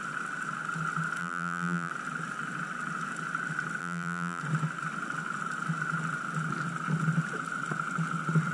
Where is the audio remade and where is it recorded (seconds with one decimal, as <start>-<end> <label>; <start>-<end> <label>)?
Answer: 0.0-1.2 recorded; 1.2-1.9 remade; 1.9-3.8 recorded; 3.8-4.4 remade; 4.4-8.5 recorded